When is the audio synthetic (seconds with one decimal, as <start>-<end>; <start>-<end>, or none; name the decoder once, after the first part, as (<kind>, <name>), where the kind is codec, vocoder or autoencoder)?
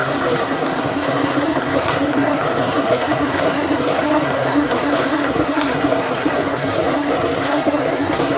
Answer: 0.0-8.4 (codec, SNAC)